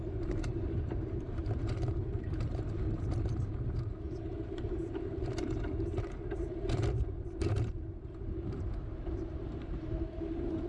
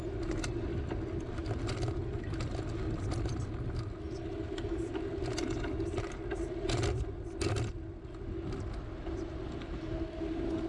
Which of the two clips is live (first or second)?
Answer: second